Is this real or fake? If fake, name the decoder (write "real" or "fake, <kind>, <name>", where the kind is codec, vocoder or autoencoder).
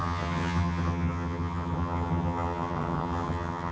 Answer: fake, vocoder, HiFi-GAN